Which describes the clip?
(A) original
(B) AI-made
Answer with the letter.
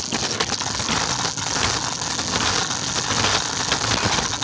A